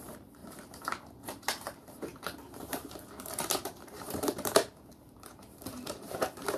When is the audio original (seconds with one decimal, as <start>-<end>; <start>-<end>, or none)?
none